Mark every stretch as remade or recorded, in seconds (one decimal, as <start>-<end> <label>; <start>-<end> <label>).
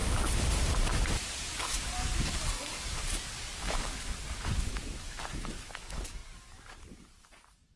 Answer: 0.0-1.5 recorded; 1.5-7.8 remade